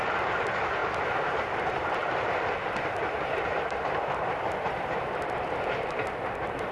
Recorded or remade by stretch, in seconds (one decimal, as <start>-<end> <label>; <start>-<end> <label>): 0.0-6.7 recorded